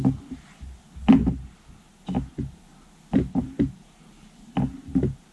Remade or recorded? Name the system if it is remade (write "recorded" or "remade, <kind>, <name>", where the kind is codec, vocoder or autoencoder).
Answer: recorded